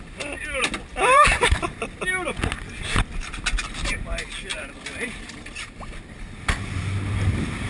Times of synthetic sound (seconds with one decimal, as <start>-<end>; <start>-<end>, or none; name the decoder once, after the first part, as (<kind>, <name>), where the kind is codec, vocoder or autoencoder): 0.9-1.7 (vocoder, BigVGAN v2); 4.5-5.6